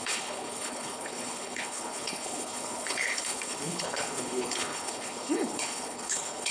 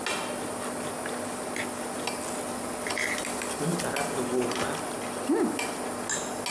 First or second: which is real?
second